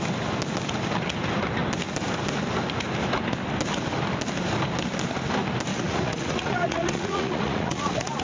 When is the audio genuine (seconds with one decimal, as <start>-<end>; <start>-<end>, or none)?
0.0-5.7